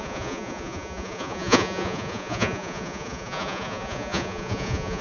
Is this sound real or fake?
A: fake